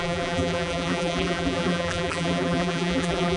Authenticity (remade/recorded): remade